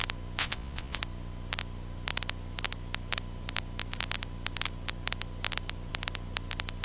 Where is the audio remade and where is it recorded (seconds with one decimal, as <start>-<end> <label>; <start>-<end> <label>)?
0.0-0.4 recorded; 0.4-1.0 remade; 1.0-6.8 recorded